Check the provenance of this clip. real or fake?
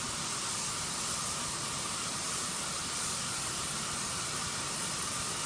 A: real